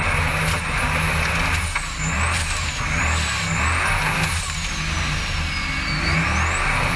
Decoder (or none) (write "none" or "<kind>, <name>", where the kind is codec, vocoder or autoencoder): none